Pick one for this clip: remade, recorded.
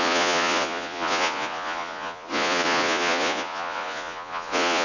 remade